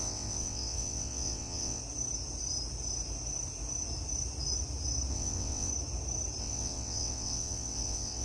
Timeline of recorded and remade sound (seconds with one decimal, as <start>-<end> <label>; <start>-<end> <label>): 0.0-1.8 remade; 1.8-5.1 recorded; 5.1-5.7 remade; 5.7-6.4 recorded; 6.4-8.2 remade